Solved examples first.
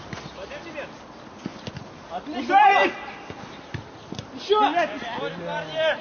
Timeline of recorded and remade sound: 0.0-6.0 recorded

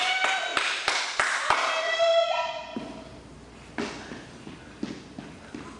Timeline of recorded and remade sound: 0.0-5.8 recorded

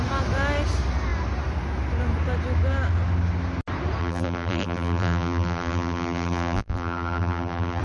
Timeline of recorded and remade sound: 0.0-4.0 recorded; 4.0-7.8 remade

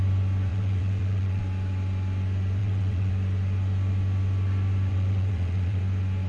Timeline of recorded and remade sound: 0.0-0.5 recorded; 0.5-1.4 remade; 1.4-2.6 recorded; 2.6-3.1 remade; 3.1-4.9 recorded; 4.9-5.8 remade; 5.8-6.3 recorded